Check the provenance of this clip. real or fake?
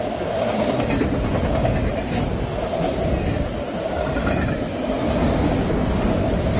real